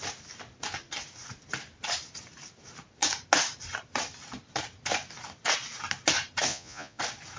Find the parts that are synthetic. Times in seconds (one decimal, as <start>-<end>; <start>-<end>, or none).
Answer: 6.5-7.0

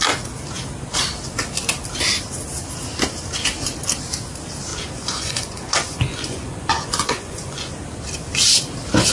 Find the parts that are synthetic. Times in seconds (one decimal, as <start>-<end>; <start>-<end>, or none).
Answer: 4.7-7.7

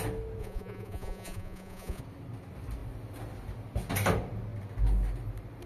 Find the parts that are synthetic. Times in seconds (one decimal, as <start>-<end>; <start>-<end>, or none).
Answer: 0.4-2.0